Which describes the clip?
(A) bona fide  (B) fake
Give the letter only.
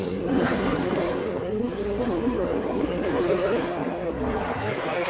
B